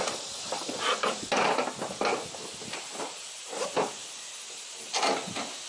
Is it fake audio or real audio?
real